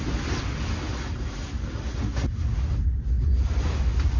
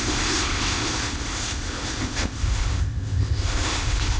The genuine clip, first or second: first